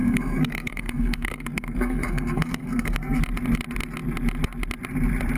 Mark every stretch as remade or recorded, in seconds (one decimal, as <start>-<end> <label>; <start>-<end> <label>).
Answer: 0.0-3.2 remade; 3.2-5.4 recorded